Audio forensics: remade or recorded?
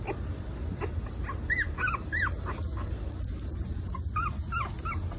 recorded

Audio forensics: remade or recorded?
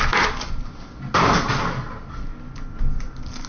recorded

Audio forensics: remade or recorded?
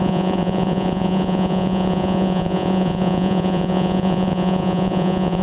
remade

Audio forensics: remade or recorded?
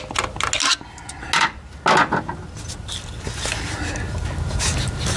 recorded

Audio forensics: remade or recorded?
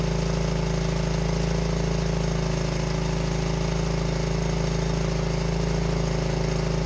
recorded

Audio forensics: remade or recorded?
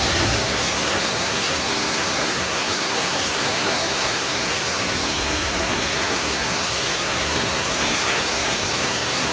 remade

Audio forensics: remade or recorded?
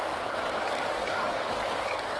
remade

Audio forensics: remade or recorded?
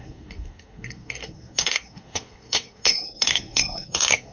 remade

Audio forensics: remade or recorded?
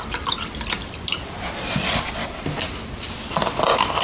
recorded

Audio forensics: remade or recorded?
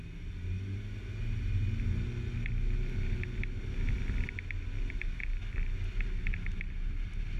recorded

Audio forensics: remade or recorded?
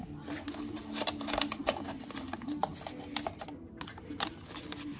recorded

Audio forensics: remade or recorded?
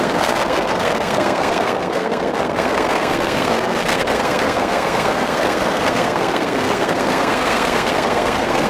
remade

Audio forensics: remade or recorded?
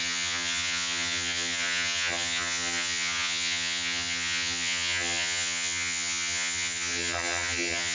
remade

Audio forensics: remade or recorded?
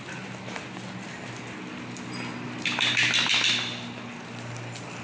recorded